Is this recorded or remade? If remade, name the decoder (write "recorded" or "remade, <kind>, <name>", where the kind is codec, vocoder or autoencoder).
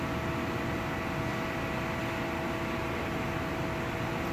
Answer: recorded